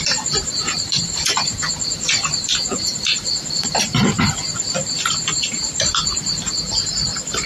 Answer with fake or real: fake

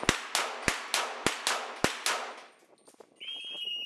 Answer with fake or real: real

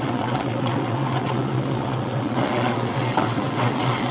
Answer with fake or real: fake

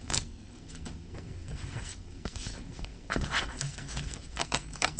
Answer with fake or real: fake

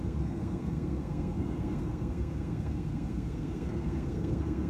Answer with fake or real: fake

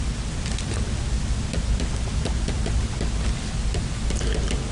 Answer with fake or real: real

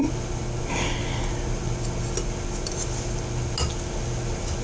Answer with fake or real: real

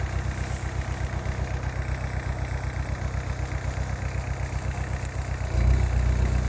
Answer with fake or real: real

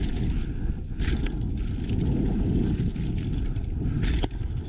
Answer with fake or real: real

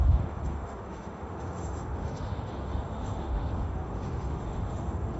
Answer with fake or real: fake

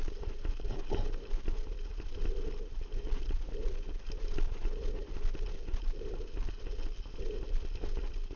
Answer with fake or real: real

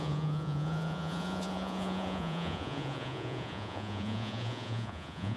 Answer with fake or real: fake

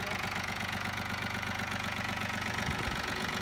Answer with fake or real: fake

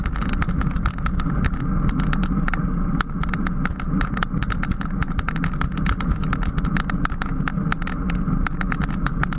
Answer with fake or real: real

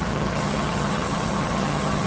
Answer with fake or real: fake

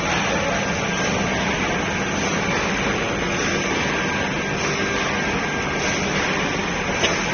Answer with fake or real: real